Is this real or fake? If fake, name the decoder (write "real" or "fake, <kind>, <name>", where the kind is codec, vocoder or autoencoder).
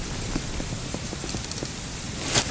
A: real